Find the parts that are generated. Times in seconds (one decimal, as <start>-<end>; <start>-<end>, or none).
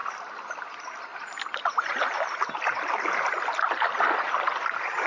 none